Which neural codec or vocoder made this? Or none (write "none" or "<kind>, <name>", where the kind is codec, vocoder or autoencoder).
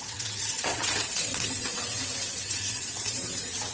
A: vocoder, WaveNeXt